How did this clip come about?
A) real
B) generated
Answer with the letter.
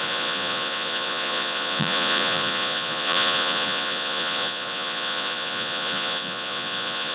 B